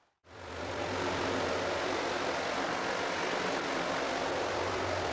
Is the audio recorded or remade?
recorded